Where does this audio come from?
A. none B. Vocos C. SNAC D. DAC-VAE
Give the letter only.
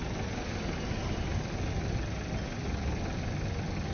A